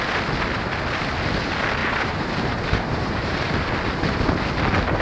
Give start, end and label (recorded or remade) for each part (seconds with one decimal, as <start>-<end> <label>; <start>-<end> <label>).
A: 0.0-1.8 recorded; 1.8-3.5 remade; 3.5-5.0 recorded